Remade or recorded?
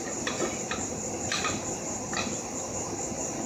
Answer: recorded